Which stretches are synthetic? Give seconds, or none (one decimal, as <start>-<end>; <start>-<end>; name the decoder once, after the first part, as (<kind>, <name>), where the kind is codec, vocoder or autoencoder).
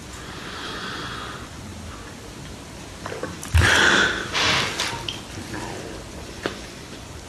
0.0-1.7 (vocoder, Vocos); 6.1-7.3